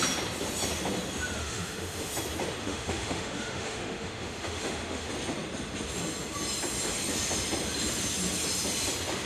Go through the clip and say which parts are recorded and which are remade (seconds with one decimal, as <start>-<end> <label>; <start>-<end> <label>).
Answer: 0.0-1.4 recorded; 1.4-2.1 remade; 2.1-2.6 recorded; 2.6-5.1 remade; 5.1-9.3 recorded